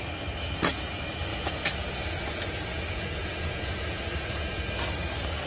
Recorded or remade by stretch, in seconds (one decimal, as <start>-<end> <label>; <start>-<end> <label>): 0.0-1.3 recorded; 1.3-4.6 remade; 4.6-5.5 recorded